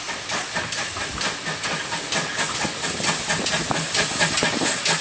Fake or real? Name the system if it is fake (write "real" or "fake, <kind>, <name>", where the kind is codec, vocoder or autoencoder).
real